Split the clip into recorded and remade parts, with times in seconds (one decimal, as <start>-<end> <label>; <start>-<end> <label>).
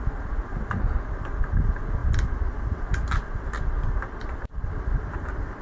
0.0-5.6 recorded